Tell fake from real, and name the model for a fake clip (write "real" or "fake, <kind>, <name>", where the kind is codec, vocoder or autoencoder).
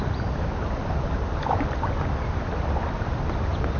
real